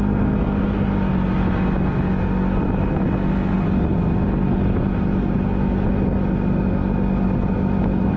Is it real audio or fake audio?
real